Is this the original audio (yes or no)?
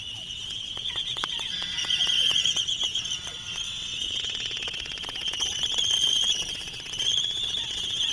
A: no